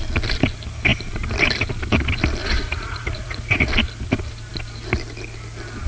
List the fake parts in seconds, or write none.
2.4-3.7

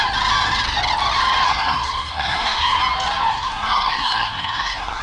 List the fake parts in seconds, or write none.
1.5-2.8; 3.3-5.0

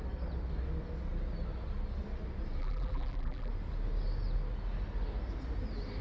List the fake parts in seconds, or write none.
2.6-3.5